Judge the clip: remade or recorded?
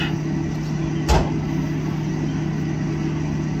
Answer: recorded